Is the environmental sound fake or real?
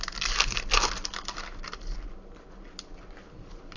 real